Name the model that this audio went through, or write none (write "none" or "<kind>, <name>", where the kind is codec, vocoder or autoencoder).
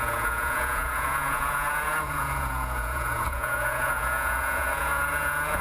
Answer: vocoder, Vocos